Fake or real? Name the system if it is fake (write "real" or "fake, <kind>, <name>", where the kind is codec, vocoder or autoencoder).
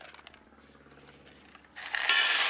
real